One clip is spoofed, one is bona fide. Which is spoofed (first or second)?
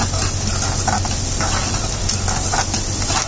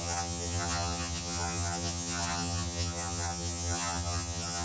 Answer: second